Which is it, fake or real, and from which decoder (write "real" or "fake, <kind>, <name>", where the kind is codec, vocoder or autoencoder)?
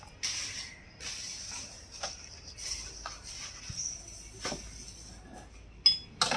real